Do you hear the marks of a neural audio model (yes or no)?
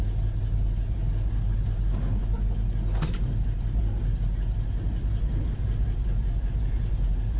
no